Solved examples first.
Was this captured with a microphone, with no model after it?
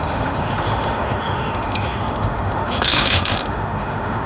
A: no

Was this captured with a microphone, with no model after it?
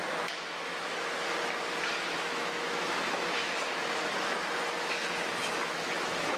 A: no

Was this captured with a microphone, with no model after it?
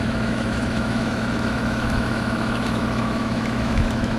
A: no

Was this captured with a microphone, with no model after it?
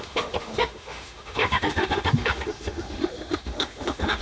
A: no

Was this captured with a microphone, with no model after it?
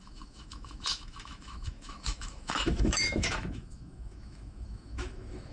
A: no